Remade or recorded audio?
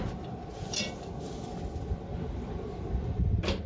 recorded